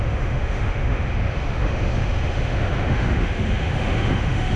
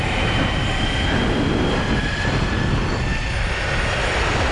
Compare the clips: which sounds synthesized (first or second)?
first